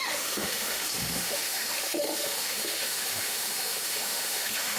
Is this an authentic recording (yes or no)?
no